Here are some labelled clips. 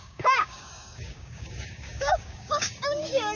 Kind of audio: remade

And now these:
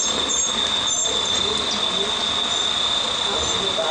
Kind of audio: recorded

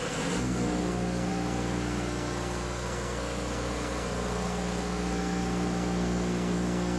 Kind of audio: remade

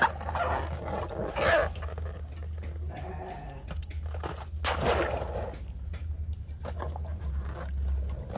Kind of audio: recorded